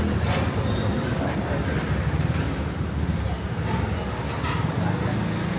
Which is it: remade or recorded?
recorded